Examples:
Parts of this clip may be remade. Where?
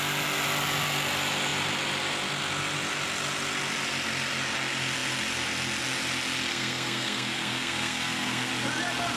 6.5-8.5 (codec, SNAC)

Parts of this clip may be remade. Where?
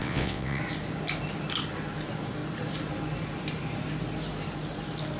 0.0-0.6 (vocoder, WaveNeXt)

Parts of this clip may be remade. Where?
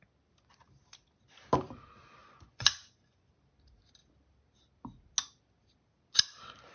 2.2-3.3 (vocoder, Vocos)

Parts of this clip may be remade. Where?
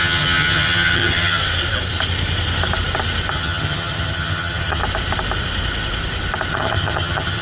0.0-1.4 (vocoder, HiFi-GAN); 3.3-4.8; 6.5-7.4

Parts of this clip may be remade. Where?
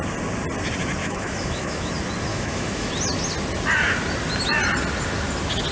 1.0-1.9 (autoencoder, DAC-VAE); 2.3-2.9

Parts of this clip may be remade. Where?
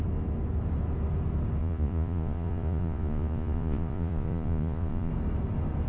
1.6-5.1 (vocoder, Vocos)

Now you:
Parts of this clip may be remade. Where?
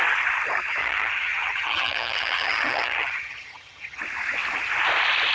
0.8-4.0 (vocoder, HiFi-GAN)